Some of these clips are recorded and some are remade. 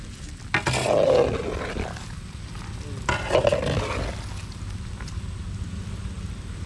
recorded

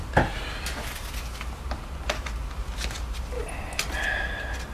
recorded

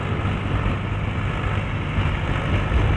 recorded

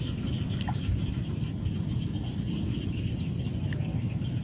recorded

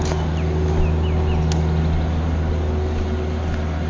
recorded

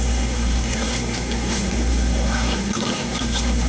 remade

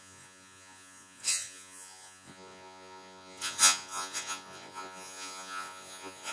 remade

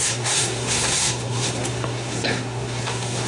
remade